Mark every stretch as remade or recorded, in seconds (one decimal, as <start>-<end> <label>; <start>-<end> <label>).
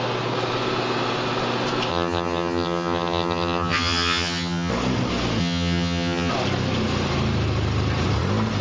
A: 0.0-1.9 recorded; 1.9-4.7 remade; 4.7-5.4 recorded; 5.4-6.3 remade; 6.3-8.6 recorded